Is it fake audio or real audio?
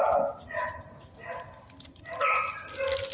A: real